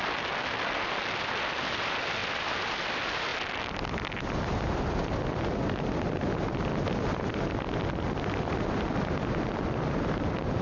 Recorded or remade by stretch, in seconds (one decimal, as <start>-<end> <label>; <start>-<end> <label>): 0.0-10.6 recorded